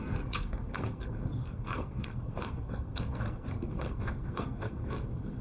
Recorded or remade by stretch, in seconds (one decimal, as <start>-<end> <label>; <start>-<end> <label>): 0.0-5.4 remade